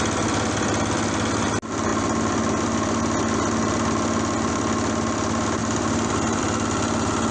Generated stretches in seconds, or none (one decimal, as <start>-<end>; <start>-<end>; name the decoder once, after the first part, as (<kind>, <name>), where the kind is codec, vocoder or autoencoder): 5.6-6.4 (vocoder, BigVGAN v2)